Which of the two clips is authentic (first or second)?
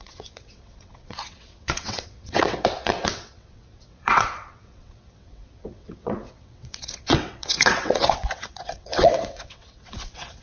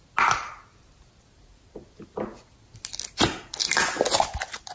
second